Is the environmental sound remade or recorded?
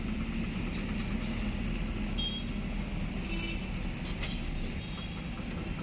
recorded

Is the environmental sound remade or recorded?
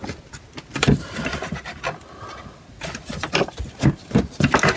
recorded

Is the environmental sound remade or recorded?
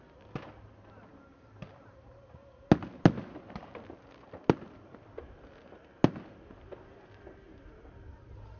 recorded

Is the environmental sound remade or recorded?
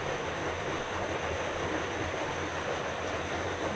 recorded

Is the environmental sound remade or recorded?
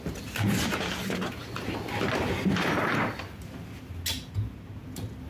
recorded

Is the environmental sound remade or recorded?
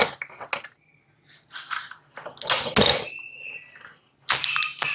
recorded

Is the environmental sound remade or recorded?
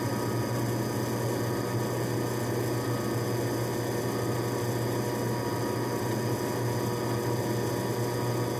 recorded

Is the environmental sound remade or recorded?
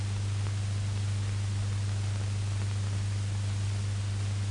recorded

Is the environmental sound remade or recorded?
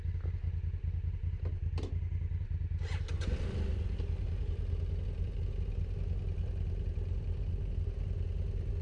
recorded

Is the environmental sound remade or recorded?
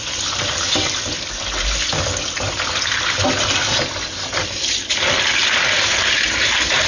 remade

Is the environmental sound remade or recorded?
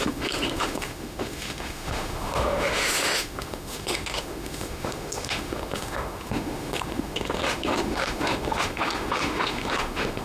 remade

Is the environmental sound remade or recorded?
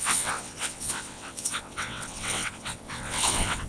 remade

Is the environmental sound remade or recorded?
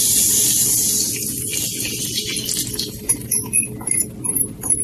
recorded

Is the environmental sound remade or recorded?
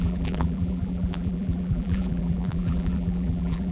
remade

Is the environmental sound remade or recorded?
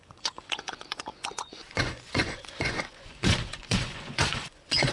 remade